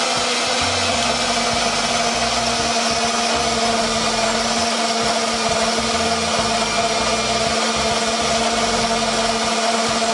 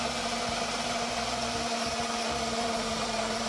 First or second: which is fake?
second